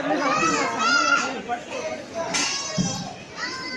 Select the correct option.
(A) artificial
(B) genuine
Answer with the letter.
B